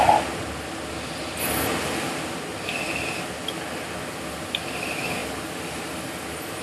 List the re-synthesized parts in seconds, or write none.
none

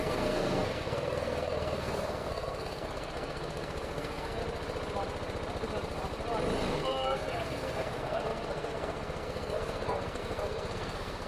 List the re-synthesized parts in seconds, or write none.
0.0-4.4 (codec, SNAC); 6.7-11.3

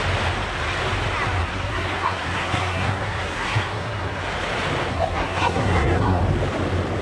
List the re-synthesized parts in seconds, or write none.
1.4-4.2 (codec, SNAC); 4.9-6.2

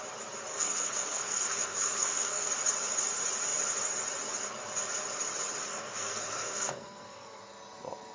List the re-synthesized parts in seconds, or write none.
0.5-2.5 (codec, SNAC); 5.7-7.4

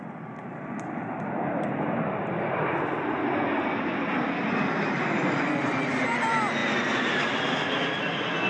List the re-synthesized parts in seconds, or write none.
none